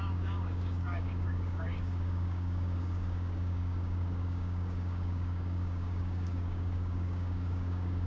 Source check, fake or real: fake